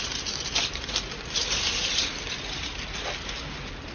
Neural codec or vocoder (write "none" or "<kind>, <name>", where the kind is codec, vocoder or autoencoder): none